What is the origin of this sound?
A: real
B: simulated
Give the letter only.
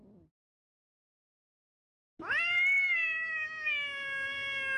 A